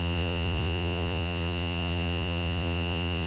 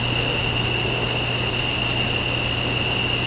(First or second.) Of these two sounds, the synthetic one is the first